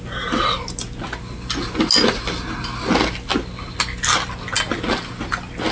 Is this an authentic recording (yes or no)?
yes